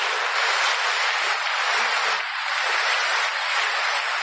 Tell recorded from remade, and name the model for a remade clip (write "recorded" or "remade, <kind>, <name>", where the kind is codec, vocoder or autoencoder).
recorded